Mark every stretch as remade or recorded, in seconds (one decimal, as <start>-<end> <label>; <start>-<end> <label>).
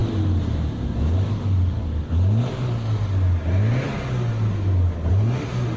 0.0-1.3 recorded; 1.3-1.8 remade; 1.8-5.1 recorded; 5.1-5.8 remade